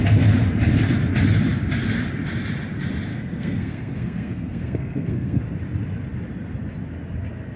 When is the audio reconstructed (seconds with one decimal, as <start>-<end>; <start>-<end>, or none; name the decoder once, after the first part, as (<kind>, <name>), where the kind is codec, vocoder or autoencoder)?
3.1-5.4 (codec, SNAC)